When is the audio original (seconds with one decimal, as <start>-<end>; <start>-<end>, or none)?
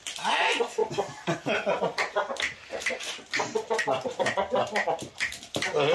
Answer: 0.0-0.8; 1.8-3.5; 5.1-5.9